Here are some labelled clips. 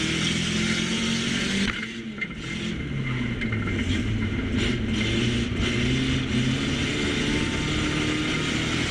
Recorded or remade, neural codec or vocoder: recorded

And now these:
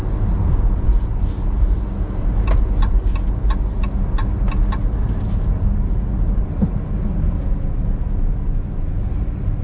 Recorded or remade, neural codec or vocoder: recorded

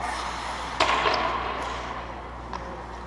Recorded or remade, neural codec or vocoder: recorded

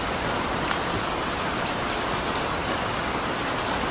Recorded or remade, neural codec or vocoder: recorded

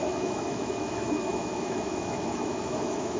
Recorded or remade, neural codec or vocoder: remade, autoencoder, DAC-VAE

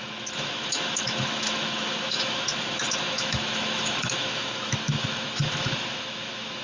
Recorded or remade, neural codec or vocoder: remade, autoencoder, DAC-VAE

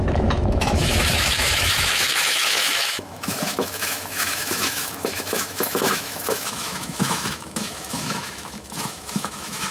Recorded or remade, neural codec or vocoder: remade, autoencoder, DAC-VAE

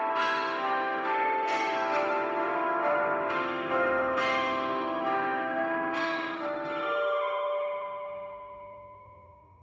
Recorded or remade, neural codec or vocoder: remade, autoencoder, DAC-VAE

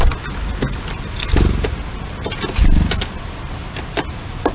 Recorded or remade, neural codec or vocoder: recorded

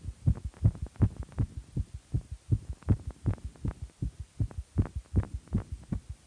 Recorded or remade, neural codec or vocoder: recorded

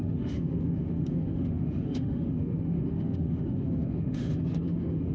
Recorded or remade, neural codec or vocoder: remade, autoencoder, DAC-VAE